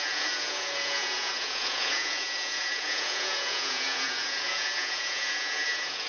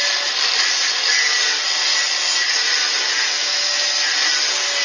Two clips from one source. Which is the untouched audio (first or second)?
second